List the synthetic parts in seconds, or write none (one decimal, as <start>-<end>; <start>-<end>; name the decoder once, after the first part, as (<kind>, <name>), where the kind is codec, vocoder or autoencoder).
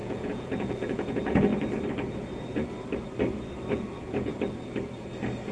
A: 0.0-1.5 (vocoder, Vocos); 3.7-4.3